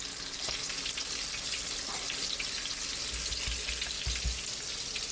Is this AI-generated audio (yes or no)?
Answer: no